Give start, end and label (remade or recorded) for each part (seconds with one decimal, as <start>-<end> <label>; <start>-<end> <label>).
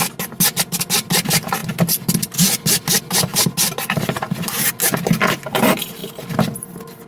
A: 0.0-3.3 recorded; 3.3-4.7 remade; 4.7-7.1 recorded